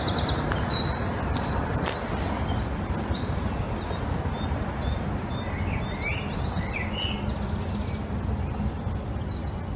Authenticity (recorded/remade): recorded